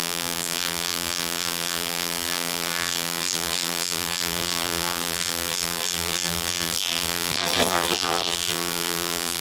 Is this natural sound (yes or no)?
no